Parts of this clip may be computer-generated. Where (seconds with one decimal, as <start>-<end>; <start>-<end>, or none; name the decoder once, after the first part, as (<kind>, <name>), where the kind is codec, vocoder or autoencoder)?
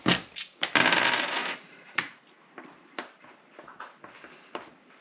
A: 1.4-2.4 (vocoder, Vocos)